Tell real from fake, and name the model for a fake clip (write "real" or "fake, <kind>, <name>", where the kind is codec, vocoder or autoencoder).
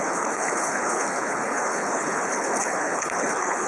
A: fake, codec, HILCodec